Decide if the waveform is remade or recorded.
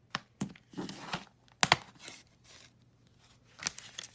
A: recorded